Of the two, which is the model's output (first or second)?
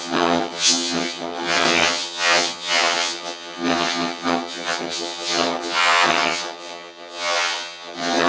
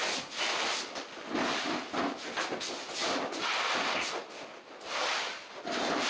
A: first